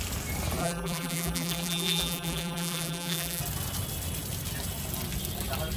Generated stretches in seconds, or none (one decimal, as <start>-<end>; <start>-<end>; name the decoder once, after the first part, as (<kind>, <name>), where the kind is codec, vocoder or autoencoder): 0.6-3.4 (vocoder, BigVGAN v2)